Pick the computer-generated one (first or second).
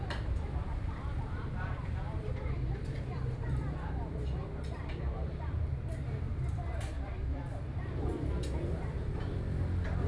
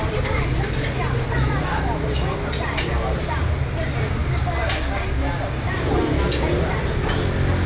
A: first